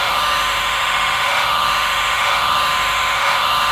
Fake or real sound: fake